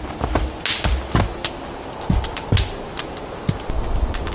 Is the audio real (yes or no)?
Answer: yes